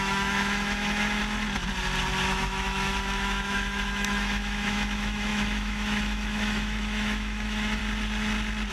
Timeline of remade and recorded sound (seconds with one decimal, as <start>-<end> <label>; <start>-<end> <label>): 0.0-1.2 remade; 1.2-2.3 recorded; 2.3-7.8 remade; 7.8-8.7 recorded